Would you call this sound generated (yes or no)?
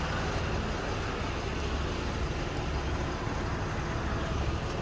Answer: no